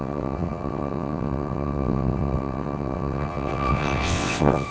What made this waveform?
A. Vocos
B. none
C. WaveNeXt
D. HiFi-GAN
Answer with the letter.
C